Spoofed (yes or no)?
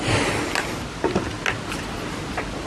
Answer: no